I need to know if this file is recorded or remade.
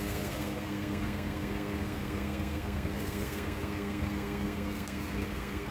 remade